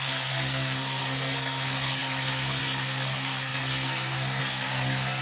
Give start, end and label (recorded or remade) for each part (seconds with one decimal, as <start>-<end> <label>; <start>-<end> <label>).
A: 0.0-5.2 remade